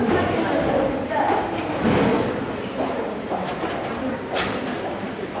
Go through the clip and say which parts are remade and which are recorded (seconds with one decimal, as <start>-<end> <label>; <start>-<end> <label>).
0.0-5.4 remade